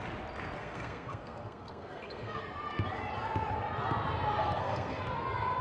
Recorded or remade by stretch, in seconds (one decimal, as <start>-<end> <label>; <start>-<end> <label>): 0.0-0.6 recorded; 0.6-2.4 remade; 2.4-4.4 recorded; 4.4-5.0 remade; 5.0-5.6 recorded